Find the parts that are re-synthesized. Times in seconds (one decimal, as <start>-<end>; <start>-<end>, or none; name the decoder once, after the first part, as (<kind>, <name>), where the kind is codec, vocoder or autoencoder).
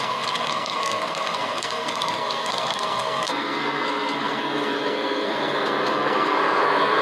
0.0-7.0 (codec, SNAC)